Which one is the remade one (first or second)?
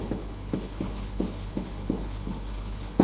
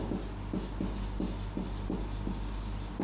first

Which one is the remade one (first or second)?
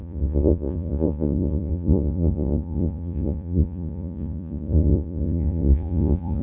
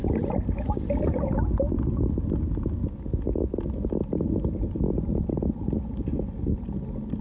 first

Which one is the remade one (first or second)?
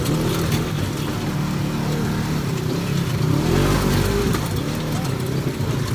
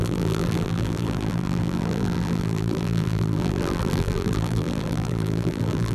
second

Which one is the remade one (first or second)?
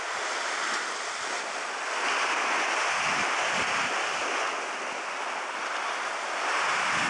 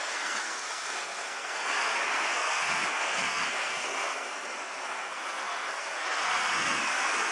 second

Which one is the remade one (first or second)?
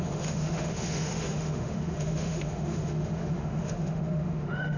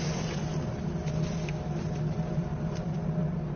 first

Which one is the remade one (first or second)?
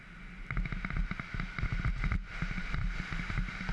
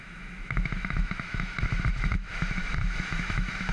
second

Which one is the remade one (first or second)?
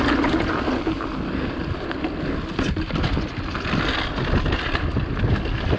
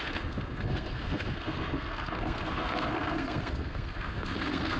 second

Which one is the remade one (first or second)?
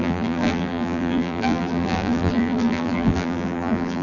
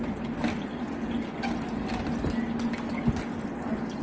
first